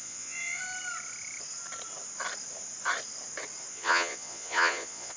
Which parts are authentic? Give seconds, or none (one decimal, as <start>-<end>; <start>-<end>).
0.6-3.7

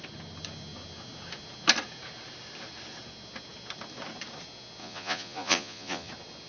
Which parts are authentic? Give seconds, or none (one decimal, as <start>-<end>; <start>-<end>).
0.0-4.8; 6.1-6.5

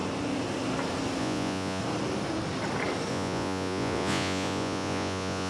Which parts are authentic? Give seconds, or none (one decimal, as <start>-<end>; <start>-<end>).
0.0-1.2; 1.8-3.1

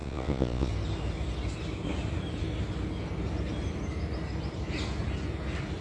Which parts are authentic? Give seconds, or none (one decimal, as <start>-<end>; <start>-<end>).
0.7-5.8